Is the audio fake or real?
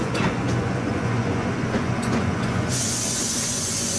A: fake